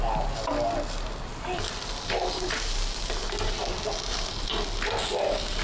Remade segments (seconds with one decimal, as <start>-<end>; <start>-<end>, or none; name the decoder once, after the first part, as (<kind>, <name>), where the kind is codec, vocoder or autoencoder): none